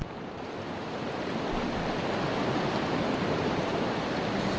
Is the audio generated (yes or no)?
no